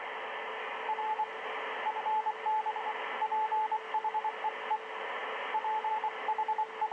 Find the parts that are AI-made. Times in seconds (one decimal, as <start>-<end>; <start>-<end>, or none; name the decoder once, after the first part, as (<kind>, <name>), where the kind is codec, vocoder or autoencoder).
none